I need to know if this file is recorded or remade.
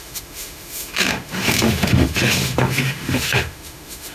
remade